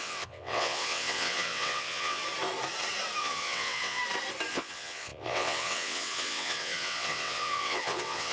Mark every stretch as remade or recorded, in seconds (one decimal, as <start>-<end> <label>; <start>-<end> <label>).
0.0-2.2 remade; 2.2-3.2 recorded; 3.2-4.0 remade; 4.0-4.5 recorded; 4.5-8.3 remade